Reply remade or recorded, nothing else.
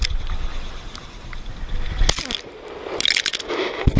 recorded